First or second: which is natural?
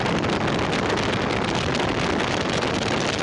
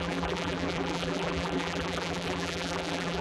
first